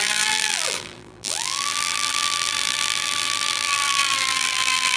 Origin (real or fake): fake